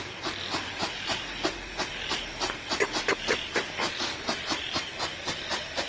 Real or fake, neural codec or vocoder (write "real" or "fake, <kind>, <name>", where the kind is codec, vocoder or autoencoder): real